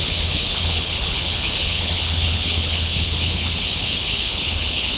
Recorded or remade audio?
remade